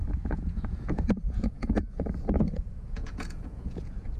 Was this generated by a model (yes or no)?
yes